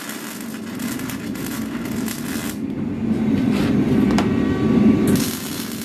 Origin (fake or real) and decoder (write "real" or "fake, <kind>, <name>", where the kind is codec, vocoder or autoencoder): real